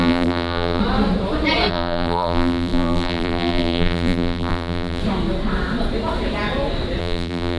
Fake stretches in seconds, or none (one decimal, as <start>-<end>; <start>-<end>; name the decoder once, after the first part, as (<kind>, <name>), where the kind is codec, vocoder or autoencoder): 0.0-0.8 (vocoder, BigVGAN v2); 1.7-5.0; 7.0-7.6